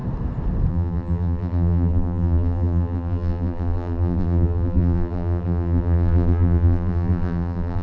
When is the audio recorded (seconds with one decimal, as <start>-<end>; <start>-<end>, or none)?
0.0-0.7